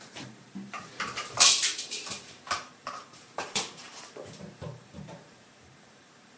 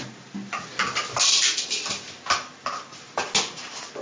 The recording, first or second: second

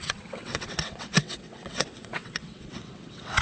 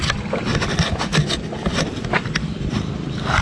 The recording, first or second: second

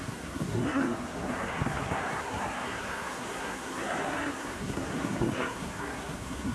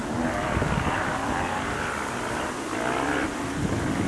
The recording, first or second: second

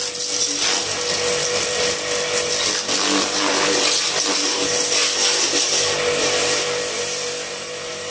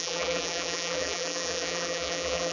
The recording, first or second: first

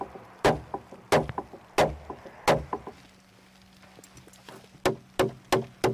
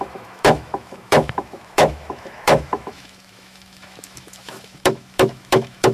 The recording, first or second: first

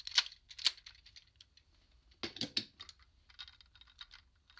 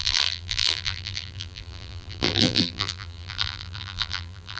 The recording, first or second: first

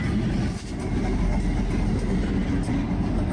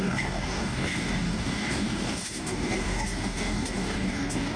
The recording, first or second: first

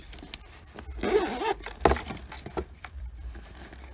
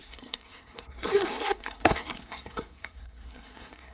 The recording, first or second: first